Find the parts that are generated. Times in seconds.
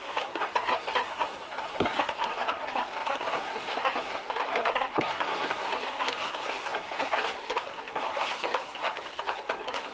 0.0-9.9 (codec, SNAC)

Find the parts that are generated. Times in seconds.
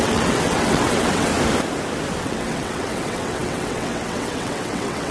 0.0-1.3 (vocoder, WaveNeXt); 2.2-5.1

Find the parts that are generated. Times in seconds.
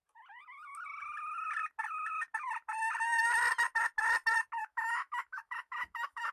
4.6-6.3 (autoencoder, DAC-VAE)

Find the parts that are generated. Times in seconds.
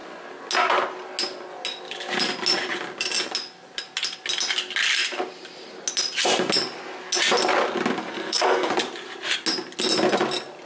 8.0-8.7 (codec, SNAC)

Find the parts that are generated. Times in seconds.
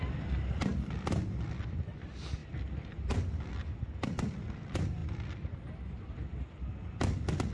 none